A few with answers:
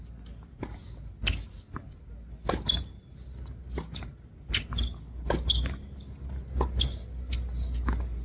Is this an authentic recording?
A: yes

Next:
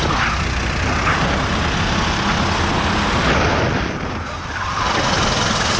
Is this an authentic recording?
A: yes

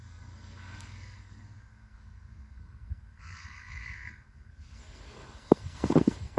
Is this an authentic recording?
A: no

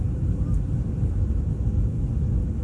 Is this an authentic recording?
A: yes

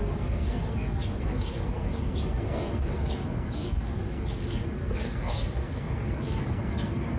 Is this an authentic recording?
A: no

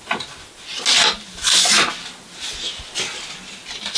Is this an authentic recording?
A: yes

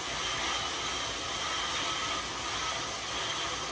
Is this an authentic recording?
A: yes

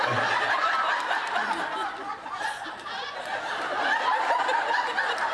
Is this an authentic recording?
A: yes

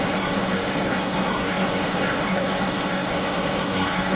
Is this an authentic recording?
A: no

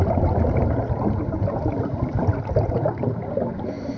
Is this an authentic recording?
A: yes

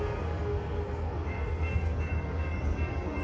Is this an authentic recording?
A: no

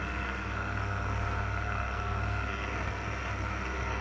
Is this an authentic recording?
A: no